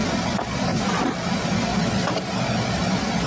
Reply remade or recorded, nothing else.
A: recorded